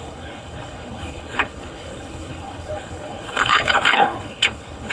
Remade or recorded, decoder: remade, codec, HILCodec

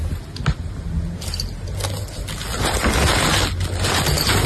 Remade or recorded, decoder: recorded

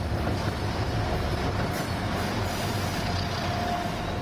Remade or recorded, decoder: recorded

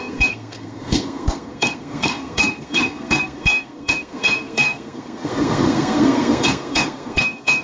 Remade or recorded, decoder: remade, codec, SNAC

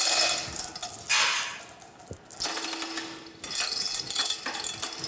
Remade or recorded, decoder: recorded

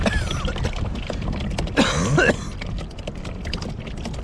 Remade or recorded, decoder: recorded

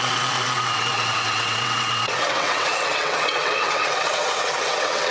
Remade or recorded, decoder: remade, vocoder, WaveNeXt